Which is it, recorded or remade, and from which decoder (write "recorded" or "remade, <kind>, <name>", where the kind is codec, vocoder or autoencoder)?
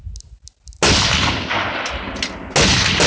recorded